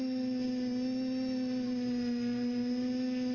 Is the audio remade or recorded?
recorded